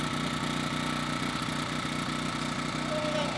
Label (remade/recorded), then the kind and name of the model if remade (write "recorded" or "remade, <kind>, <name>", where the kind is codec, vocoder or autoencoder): recorded